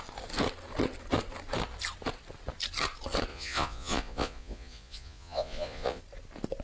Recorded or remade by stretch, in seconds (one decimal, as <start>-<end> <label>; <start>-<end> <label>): 0.0-3.3 recorded; 3.3-6.0 remade; 6.0-6.6 recorded